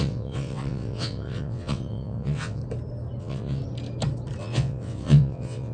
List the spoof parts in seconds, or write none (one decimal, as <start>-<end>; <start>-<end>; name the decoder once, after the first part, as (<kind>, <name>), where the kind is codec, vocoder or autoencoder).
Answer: 0.0-2.6 (vocoder, WaveNeXt); 3.2-3.6; 4.4-5.7